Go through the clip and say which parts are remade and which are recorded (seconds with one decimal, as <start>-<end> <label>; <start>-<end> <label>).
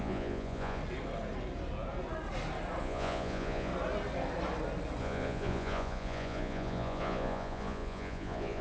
0.0-0.8 remade; 0.8-2.8 recorded; 2.8-3.7 remade; 3.7-5.0 recorded; 5.0-8.6 remade